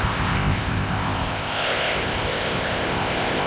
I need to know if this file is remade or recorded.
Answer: remade